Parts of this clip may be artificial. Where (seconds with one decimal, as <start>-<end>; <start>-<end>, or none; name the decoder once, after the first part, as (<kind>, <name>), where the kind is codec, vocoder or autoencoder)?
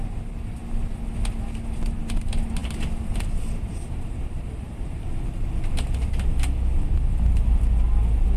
none